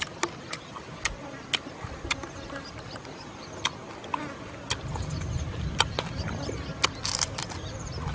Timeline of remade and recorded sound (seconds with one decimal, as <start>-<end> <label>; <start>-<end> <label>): 0.0-8.1 recorded